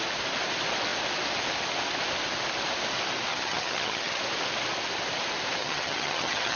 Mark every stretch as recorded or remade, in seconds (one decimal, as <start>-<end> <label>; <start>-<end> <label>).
0.0-3.3 recorded; 3.3-4.2 remade; 4.2-5.6 recorded; 5.6-6.6 remade